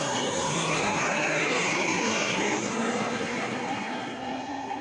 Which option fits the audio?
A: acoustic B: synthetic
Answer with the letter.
B